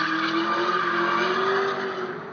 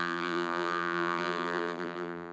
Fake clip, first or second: second